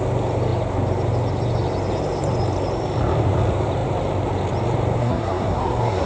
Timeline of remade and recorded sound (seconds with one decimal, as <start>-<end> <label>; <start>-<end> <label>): 0.0-5.0 recorded; 5.0-6.1 remade